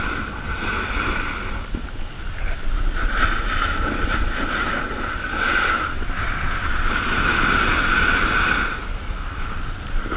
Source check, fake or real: real